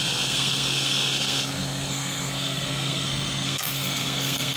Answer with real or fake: fake